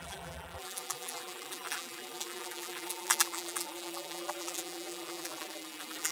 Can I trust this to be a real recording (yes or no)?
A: no